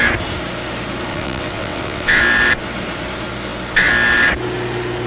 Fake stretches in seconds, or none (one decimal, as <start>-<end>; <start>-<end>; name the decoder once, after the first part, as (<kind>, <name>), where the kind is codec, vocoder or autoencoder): 1.1-2.2 (vocoder, WaveNeXt)